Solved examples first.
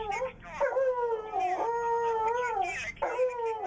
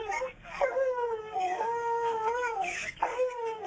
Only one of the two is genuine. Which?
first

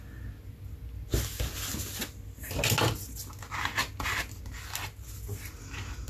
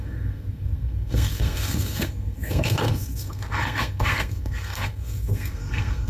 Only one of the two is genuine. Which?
first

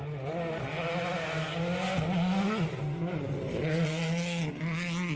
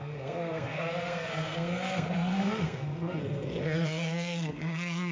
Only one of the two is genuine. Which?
first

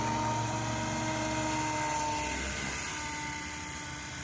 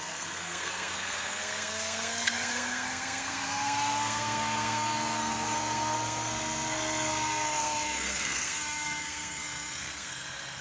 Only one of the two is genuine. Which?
first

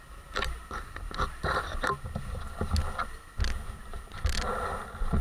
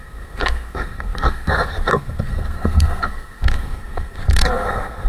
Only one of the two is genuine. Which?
first